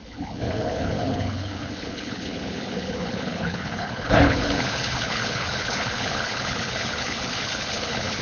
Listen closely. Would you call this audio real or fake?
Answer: fake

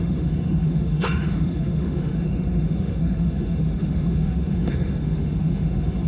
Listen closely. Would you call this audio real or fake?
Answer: fake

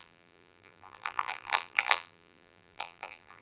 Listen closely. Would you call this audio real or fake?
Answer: fake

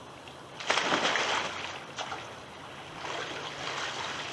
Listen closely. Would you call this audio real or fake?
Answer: real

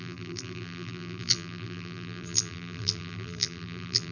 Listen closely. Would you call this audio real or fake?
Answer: fake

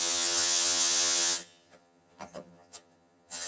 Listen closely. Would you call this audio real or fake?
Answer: fake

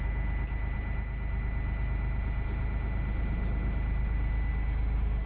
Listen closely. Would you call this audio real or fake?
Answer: real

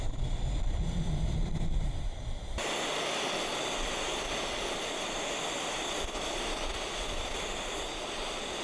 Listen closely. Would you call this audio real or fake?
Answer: real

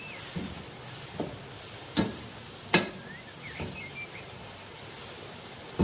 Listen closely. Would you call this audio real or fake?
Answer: real